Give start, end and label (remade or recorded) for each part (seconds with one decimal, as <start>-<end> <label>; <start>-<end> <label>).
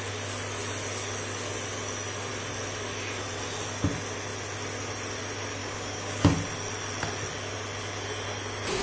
0.0-5.6 recorded; 5.6-6.2 remade; 6.2-8.8 recorded